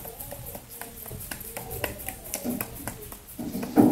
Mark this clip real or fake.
real